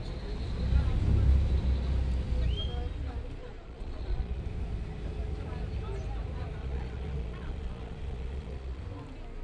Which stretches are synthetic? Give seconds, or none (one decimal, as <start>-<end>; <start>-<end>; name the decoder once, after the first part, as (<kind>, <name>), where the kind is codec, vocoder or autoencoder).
3.4-4.4 (vocoder, Vocos); 6.6-8.8

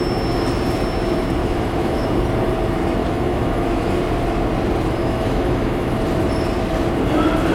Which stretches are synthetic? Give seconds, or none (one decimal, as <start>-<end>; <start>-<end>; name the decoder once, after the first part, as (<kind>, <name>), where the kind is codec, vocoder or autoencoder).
1.4-2.1 (autoencoder, DAC-VAE); 3.0-3.9; 5.0-5.9

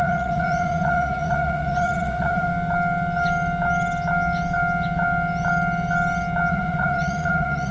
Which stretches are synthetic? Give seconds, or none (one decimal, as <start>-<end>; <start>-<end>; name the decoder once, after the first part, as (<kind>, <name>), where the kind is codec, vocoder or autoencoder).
0.0-2.5 (vocoder, Vocos); 6.5-7.7

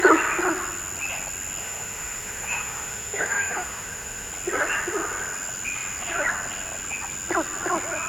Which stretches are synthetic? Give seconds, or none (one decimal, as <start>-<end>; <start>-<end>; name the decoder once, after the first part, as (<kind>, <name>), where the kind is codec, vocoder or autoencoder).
1.6-4.3 (autoencoder, DAC-VAE)

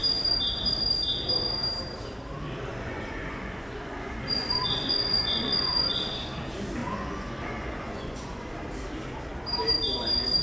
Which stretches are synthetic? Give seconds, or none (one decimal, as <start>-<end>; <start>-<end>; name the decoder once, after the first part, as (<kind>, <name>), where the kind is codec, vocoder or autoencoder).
2.7-6.3 (vocoder, Vocos); 6.8-8.5

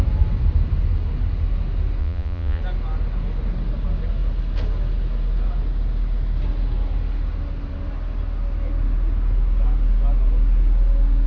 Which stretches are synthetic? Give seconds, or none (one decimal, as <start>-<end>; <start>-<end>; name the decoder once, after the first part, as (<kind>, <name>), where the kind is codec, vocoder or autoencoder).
2.0-2.6 (vocoder, Vocos)